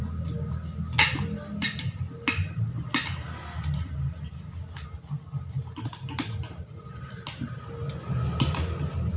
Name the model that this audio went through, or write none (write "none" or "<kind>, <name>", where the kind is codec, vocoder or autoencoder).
none